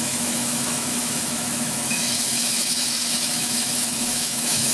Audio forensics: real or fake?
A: fake